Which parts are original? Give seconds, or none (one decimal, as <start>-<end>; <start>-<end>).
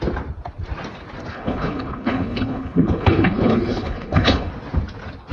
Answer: 0.0-1.3; 4.5-5.3